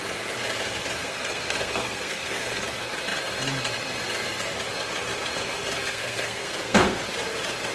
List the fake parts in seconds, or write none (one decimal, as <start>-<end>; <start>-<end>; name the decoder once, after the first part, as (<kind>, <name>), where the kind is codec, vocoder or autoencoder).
1.0-2.6 (codec, SNAC); 5.9-7.0